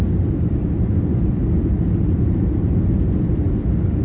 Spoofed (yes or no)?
no